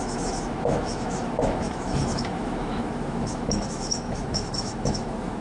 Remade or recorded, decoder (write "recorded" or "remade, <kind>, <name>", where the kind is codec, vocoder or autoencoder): remade, autoencoder, DAC-VAE